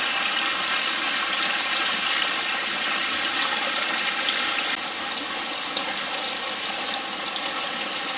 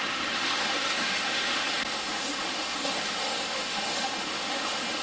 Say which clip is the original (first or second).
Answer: first